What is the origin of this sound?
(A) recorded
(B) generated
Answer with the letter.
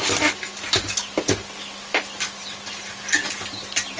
A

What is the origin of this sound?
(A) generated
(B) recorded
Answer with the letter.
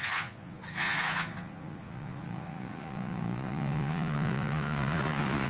A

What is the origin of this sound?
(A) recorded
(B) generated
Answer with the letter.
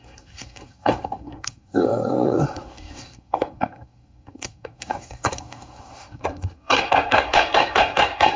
B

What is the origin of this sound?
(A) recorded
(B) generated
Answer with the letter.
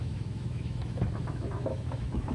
B